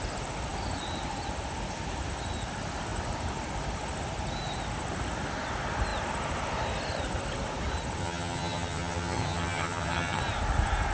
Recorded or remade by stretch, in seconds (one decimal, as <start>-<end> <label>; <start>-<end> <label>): 0.0-8.0 recorded; 8.0-10.2 remade; 10.2-10.9 recorded

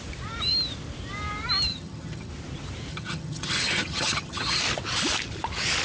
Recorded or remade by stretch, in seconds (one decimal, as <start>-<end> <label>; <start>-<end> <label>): 0.0-1.7 recorded; 1.7-2.3 remade; 2.3-2.9 recorded; 2.9-4.6 remade; 4.6-5.8 recorded

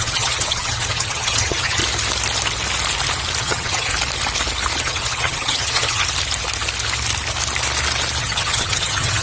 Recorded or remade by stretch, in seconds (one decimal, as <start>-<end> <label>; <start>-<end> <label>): 0.0-1.8 remade; 1.8-3.4 recorded; 3.4-3.9 remade; 3.9-4.8 recorded; 4.8-6.0 remade; 6.0-8.2 recorded; 8.2-9.2 remade